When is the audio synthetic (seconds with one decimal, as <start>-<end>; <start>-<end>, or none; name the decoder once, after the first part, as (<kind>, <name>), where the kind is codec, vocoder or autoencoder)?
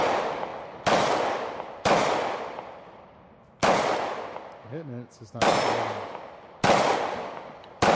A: 4.7-5.4 (autoencoder, DAC-VAE)